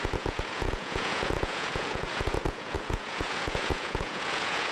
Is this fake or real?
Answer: fake